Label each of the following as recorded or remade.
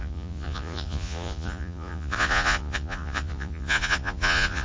remade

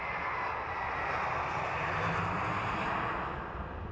recorded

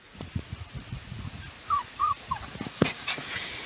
remade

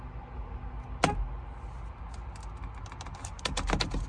recorded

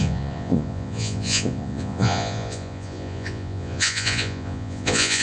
remade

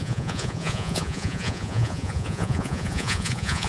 remade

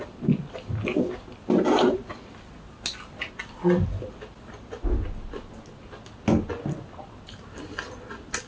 recorded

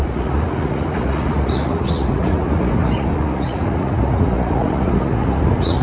remade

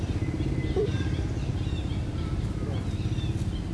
recorded